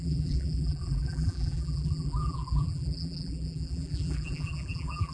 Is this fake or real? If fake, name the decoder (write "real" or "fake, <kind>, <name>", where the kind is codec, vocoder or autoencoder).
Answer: fake, vocoder, BigVGAN v2